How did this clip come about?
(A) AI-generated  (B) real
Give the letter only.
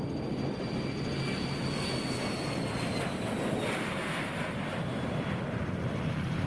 B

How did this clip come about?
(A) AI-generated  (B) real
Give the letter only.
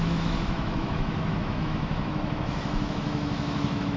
A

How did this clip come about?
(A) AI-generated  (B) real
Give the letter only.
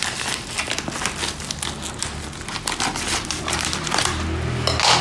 B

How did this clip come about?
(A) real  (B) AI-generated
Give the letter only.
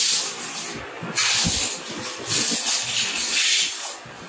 A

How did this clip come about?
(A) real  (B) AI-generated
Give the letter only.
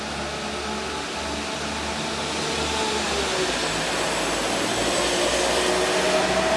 A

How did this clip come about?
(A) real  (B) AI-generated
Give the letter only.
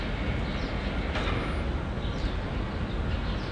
A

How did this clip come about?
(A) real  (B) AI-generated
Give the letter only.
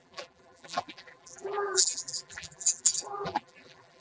B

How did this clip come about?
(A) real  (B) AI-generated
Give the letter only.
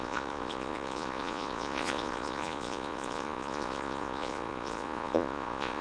B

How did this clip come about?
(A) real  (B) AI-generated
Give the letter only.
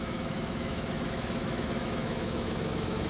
B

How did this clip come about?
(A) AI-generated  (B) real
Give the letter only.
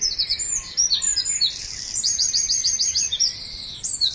A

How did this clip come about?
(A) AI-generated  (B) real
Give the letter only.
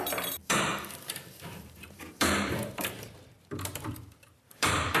A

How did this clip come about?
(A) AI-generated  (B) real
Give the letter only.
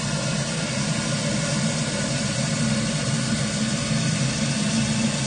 B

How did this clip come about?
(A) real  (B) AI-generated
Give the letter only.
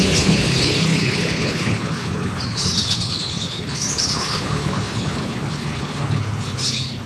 B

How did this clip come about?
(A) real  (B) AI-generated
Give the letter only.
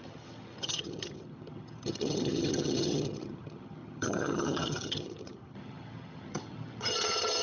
B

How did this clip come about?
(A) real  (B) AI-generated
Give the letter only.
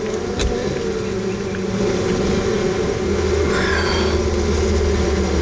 A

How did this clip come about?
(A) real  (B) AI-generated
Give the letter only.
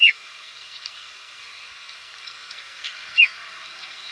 B